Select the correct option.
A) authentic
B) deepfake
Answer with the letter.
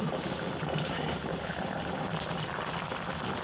A